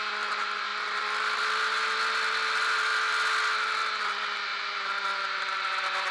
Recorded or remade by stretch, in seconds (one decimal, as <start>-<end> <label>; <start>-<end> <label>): 0.0-6.1 recorded